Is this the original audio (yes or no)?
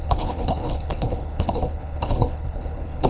no